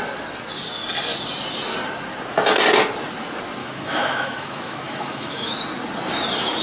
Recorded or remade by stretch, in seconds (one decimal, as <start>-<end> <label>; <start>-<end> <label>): 0.0-3.6 recorded; 3.6-5.5 remade; 5.5-6.6 recorded